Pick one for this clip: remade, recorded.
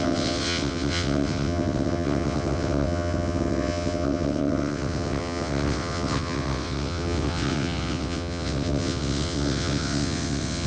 remade